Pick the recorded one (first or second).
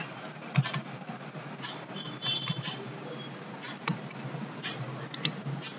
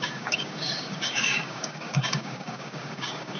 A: first